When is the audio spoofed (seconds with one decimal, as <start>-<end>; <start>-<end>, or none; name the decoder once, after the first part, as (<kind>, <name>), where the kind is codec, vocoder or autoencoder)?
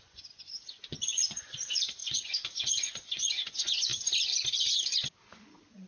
0.0-3.9 (vocoder, Vocos); 5.4-5.9